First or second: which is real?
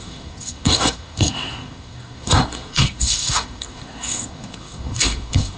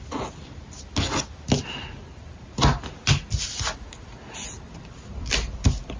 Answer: second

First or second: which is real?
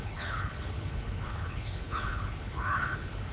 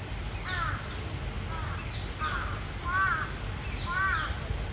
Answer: second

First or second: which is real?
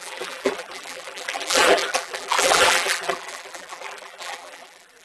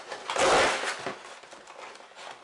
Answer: second